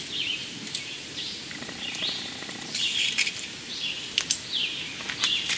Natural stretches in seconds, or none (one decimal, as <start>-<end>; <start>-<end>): 0.0-0.4; 3.8-5.6